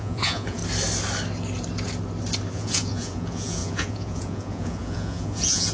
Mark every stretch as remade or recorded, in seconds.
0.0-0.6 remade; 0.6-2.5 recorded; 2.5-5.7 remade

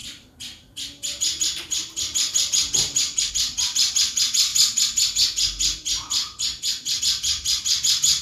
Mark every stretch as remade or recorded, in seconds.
0.0-4.5 remade; 4.5-7.0 recorded; 7.0-8.2 remade

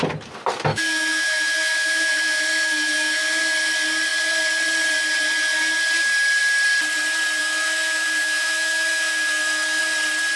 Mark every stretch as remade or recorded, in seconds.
0.0-0.7 recorded; 0.7-3.4 remade; 3.4-7.4 recorded; 7.4-9.8 remade; 9.8-10.4 recorded

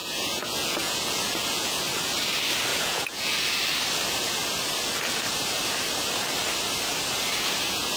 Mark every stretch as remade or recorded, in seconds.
0.0-1.8 remade; 1.8-2.7 recorded; 2.7-3.4 remade; 3.4-8.0 recorded

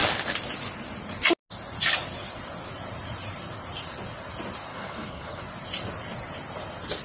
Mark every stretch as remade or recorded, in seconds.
0.0-4.7 recorded; 4.7-5.4 remade; 5.4-7.0 recorded

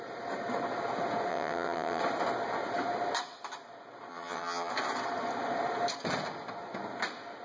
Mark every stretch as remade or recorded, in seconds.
0.0-1.3 recorded; 1.3-2.0 remade; 2.0-4.1 recorded; 4.1-4.7 remade; 4.7-7.4 recorded